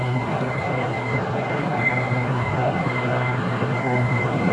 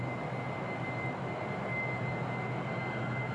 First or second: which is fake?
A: first